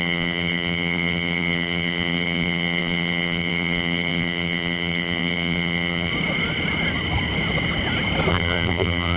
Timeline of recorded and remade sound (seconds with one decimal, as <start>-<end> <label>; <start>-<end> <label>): 0.0-6.1 remade; 6.1-8.3 recorded; 8.3-9.2 remade